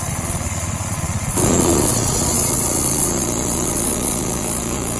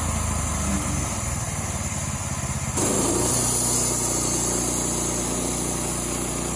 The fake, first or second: first